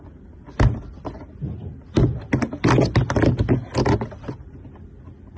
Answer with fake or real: real